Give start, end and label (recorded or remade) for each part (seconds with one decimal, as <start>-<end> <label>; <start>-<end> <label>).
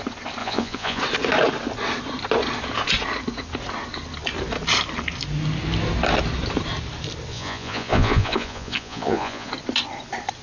0.0-0.4 recorded; 0.4-1.0 remade; 1.0-7.3 recorded; 7.3-9.5 remade; 9.5-10.4 recorded